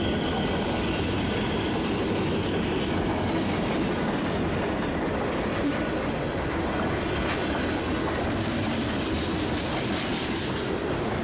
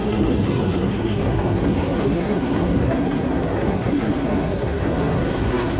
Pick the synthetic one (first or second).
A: second